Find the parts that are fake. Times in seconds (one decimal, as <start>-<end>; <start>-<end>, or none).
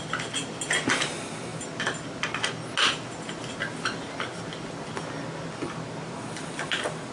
none